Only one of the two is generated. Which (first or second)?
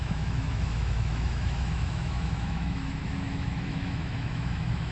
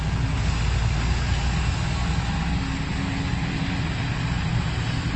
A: first